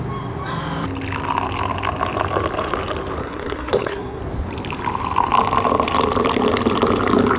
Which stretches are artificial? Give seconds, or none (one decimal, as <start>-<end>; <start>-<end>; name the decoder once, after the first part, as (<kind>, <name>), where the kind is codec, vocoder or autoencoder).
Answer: 3.2-4.2 (codec, SNAC)